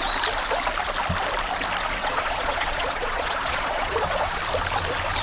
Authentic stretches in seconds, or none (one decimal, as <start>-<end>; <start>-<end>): 0.0-2.0; 4.4-5.2